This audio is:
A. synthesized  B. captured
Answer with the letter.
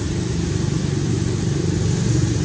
B